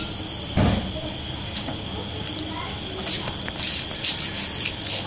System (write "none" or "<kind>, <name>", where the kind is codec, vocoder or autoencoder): none